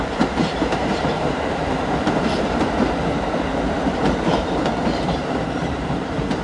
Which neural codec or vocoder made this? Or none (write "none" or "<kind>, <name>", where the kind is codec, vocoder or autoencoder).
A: vocoder, BigVGAN v2